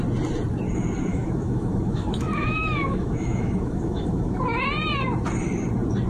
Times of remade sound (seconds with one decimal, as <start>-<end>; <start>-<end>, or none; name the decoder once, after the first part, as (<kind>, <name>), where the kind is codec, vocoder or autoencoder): 1.1-4.4 (autoencoder, DAC-VAE)